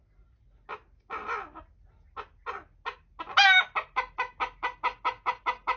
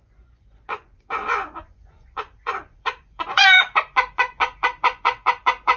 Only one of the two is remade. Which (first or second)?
second